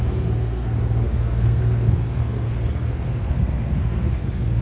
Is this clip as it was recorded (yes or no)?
no